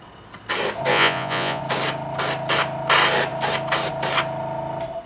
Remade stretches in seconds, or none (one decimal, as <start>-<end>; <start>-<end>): 0.9-1.6